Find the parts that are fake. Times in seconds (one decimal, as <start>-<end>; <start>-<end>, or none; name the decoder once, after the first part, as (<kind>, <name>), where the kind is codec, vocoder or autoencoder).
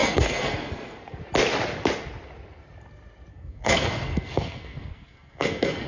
0.0-1.2 (codec, SNAC); 3.3-5.9